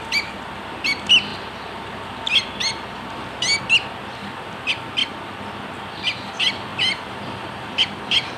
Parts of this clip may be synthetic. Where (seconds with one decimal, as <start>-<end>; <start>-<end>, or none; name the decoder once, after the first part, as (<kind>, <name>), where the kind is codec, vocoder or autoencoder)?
6.7-8.0 (vocoder, BigVGAN v2)